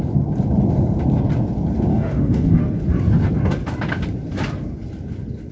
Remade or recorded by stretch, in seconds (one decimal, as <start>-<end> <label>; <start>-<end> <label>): 0.0-1.9 recorded; 1.9-2.6 remade; 2.6-5.5 recorded